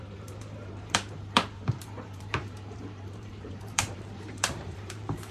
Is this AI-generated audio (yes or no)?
yes